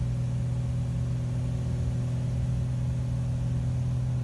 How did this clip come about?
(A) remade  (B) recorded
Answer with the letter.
B